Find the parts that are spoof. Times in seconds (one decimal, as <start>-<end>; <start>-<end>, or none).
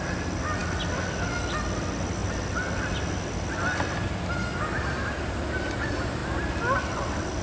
none